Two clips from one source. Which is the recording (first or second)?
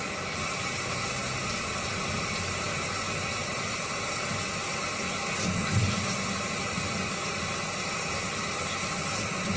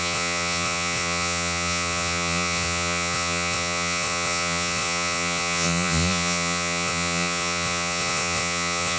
first